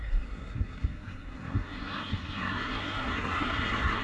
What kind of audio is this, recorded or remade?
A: remade